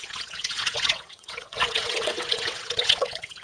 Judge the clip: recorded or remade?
remade